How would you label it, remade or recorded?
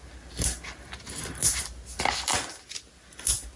recorded